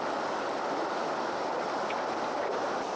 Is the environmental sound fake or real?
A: real